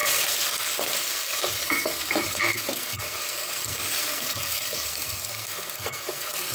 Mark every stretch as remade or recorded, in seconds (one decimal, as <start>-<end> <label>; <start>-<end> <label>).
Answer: 0.0-6.5 remade